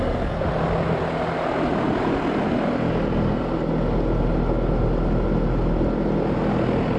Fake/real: real